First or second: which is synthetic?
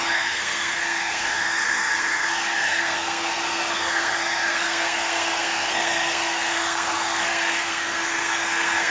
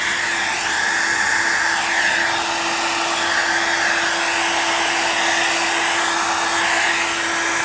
first